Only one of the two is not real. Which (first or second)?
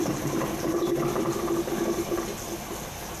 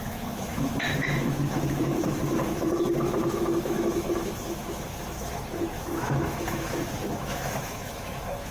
second